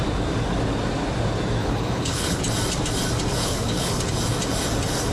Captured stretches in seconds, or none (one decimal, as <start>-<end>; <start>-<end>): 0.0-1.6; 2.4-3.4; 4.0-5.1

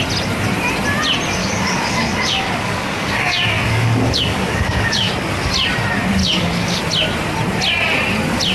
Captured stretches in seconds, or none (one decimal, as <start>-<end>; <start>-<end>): 0.0-1.4; 5.1-6.2; 6.8-8.5

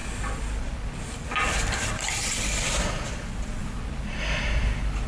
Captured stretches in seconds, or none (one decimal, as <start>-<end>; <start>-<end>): 0.0-5.1

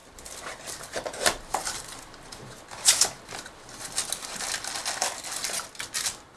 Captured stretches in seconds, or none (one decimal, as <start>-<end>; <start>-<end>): 3.8-6.4